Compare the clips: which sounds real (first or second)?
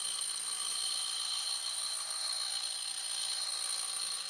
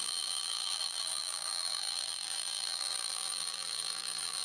first